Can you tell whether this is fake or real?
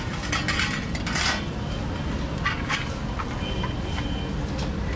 real